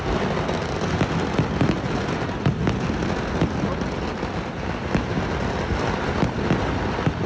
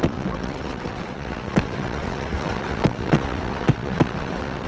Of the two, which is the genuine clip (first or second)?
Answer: first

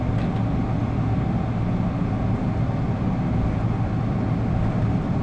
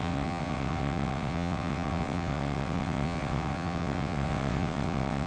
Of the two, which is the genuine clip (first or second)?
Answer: first